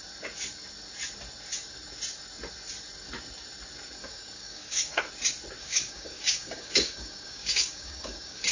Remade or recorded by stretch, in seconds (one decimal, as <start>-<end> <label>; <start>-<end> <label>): 0.0-4.0 recorded; 4.0-5.0 remade; 5.0-5.6 recorded; 5.6-8.5 remade